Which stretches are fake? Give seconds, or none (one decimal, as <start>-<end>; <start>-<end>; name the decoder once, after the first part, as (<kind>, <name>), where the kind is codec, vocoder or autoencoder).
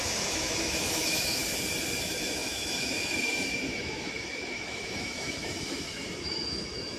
0.0-1.4 (autoencoder, DAC-VAE); 2.0-7.0